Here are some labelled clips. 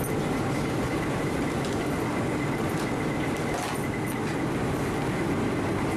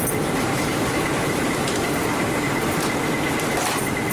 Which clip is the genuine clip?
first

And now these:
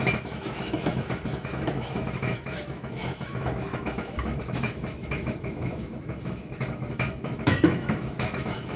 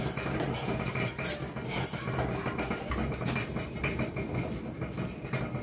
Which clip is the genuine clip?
second